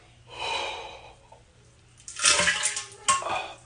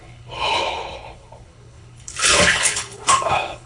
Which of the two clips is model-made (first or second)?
second